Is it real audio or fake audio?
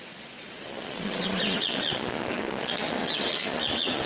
fake